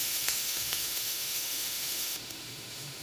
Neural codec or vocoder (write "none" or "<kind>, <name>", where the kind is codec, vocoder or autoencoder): autoencoder, DAC-VAE